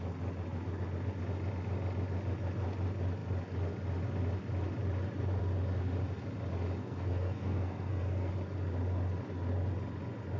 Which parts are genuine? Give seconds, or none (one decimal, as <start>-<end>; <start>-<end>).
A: 0.0-6.8; 8.3-10.4